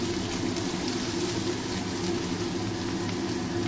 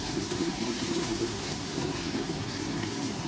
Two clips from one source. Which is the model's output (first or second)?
second